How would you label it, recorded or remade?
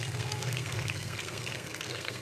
remade